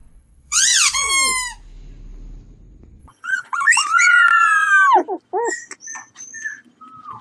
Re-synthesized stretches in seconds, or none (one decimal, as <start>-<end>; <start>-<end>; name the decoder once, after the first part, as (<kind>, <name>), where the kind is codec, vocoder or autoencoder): 0.0-1.1 (vocoder, Vocos); 3.0-4.7